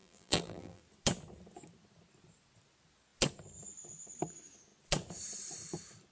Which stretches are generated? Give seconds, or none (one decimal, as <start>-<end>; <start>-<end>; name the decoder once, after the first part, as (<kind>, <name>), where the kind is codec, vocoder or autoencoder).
0.0-0.8 (vocoder, BigVGAN v2)